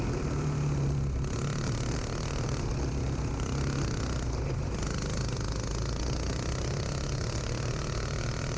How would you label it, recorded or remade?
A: recorded